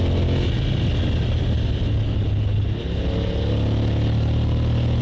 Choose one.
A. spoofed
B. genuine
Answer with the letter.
B